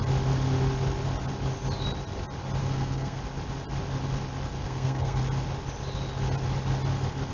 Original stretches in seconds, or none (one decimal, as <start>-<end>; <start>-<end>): 0.0-2.6; 3.2-4.6; 5.2-7.3